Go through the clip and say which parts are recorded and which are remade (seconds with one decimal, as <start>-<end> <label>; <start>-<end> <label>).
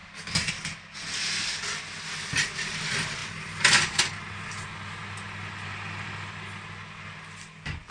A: 0.0-7.9 recorded